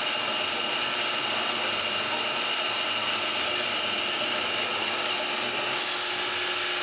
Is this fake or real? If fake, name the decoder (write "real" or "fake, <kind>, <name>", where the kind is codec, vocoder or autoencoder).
real